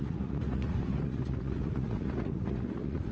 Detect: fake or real fake